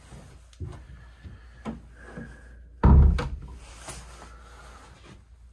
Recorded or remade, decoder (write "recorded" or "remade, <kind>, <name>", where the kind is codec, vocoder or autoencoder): recorded